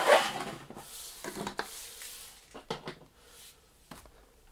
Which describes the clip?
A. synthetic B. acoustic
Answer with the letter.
B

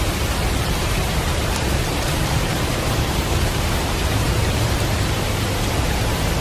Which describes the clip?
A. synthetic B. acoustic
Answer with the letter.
A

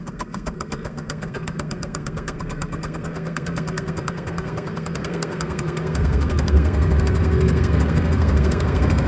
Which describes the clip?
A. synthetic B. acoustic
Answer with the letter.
A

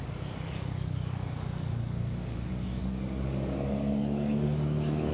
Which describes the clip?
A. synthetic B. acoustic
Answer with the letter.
A